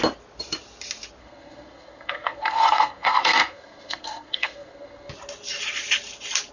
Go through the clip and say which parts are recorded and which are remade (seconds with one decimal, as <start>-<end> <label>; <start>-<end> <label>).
0.0-1.2 recorded; 1.2-5.1 remade; 5.1-6.5 recorded